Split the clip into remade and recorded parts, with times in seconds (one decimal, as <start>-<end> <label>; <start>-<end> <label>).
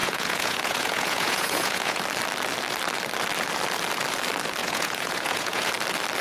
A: 0.0-2.0 remade; 2.0-4.6 recorded; 4.6-5.7 remade; 5.7-6.2 recorded